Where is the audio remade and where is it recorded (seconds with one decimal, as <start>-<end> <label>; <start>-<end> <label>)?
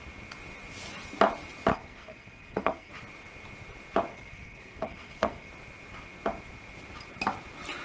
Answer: 0.0-1.7 recorded; 1.7-2.9 remade; 2.9-4.1 recorded; 4.1-5.5 remade; 5.5-7.8 recorded